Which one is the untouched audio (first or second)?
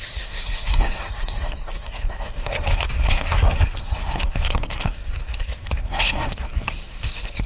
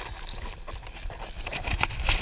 second